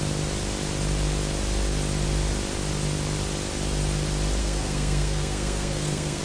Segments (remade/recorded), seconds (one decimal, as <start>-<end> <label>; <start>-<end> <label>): 0.0-4.4 recorded; 4.4-6.2 remade